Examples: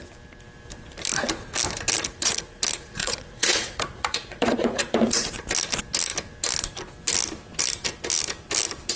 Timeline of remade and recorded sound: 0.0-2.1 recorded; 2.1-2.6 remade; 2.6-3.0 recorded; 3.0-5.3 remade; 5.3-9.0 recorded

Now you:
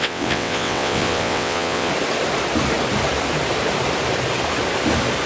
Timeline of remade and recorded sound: 0.0-1.9 remade; 1.9-5.3 recorded

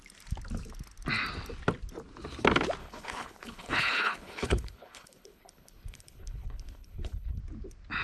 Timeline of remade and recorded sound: 0.0-2.8 recorded; 2.8-7.4 remade; 7.4-8.0 recorded

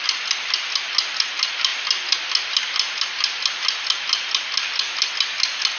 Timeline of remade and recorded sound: 0.0-5.8 recorded

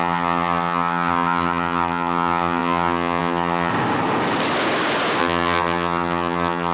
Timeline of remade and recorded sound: 0.0-3.7 remade; 3.7-5.2 recorded; 5.2-6.7 remade

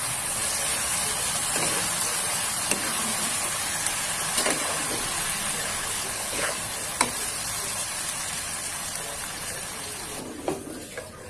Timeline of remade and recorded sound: 0.0-5.8 recorded; 5.8-6.5 remade; 6.5-11.3 recorded

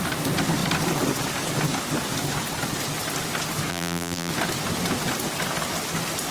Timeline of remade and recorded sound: 0.0-3.7 recorded; 3.7-4.3 remade; 4.3-6.3 recorded